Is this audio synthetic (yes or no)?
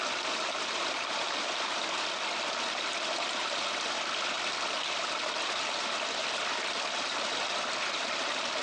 no